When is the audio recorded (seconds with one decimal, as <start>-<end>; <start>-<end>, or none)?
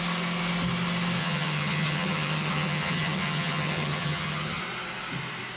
0.0-1.2; 4.6-5.6